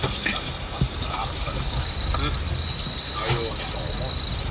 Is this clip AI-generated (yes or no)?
no